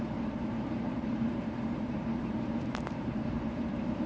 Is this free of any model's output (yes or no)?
no